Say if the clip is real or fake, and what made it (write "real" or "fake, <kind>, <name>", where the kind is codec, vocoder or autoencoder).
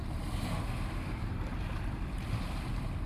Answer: real